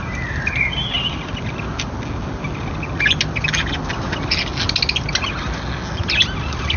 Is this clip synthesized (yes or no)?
no